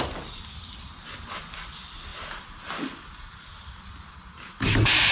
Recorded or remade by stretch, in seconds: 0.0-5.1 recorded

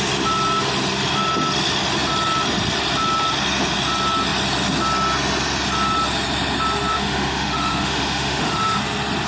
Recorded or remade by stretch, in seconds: 0.0-6.9 recorded; 6.9-8.8 remade; 8.8-9.3 recorded

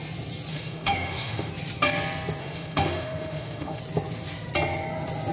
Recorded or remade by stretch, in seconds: 0.0-0.5 recorded; 0.5-1.5 remade; 1.5-2.4 recorded; 2.4-3.8 remade; 3.8-5.3 recorded

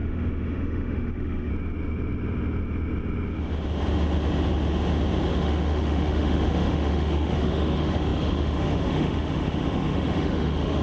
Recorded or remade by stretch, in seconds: 0.0-1.5 remade; 1.5-5.3 recorded; 5.3-10.8 remade

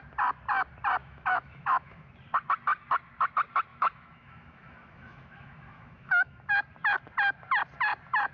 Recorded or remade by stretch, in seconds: 0.0-1.0 recorded; 1.0-2.1 remade; 2.1-3.7 recorded; 3.7-6.5 remade; 6.5-8.3 recorded

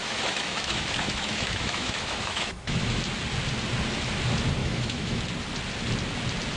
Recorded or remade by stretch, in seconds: 0.0-3.0 remade; 3.0-4.6 recorded; 4.6-5.2 remade; 5.2-6.6 recorded

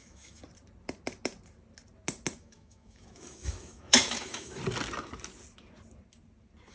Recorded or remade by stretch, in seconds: 0.0-0.4 remade; 0.4-2.4 recorded; 2.4-4.6 remade; 4.6-6.7 recorded

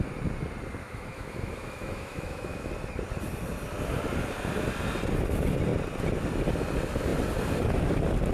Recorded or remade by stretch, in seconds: 0.0-0.8 recorded; 0.8-2.7 remade; 2.7-8.3 recorded